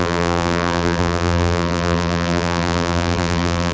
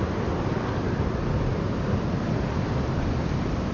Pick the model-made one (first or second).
first